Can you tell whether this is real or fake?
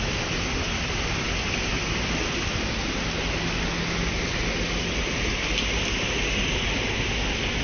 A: real